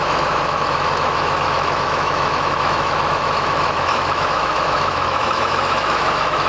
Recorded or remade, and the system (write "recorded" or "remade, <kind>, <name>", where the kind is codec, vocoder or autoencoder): remade, autoencoder, DAC-VAE